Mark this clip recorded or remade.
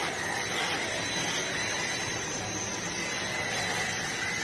recorded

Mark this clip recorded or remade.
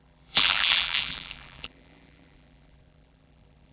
remade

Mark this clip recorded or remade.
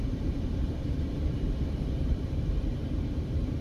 remade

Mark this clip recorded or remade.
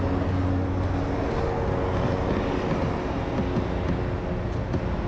recorded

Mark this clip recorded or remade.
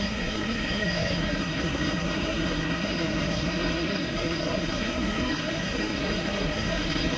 remade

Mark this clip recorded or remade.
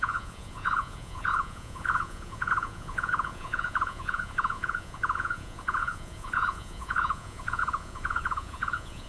remade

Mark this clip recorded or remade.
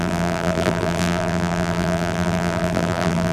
remade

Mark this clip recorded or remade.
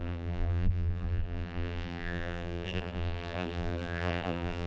remade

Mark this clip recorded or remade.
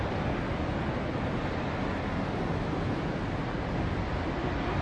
recorded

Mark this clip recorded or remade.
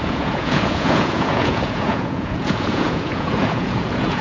remade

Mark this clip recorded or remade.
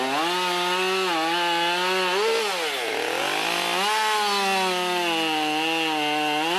recorded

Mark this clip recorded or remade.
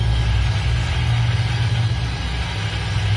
recorded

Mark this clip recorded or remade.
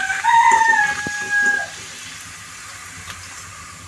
recorded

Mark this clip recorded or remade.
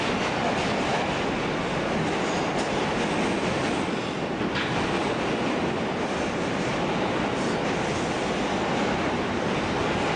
recorded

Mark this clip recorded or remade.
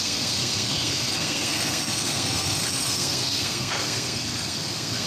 remade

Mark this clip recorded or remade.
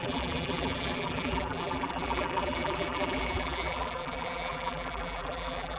remade